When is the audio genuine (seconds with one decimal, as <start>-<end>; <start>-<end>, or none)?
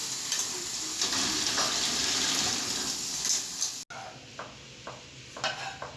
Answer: 0.0-6.0